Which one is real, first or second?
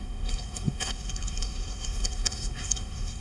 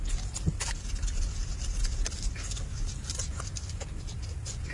second